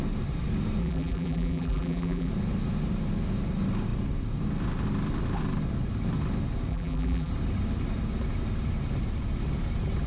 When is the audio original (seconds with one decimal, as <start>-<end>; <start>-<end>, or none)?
0.0-0.8; 2.3-6.7; 7.3-10.1